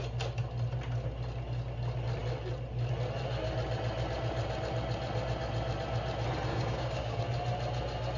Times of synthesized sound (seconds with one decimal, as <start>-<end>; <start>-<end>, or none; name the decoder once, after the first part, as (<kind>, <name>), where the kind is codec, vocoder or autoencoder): 6.5-7.2 (codec, DAC)